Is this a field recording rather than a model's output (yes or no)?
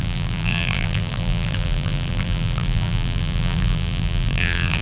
no